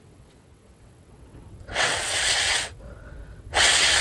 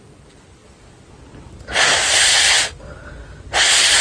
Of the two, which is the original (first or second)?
second